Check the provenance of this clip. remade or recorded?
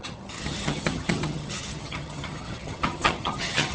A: remade